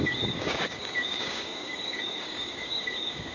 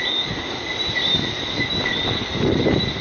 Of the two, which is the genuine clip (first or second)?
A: second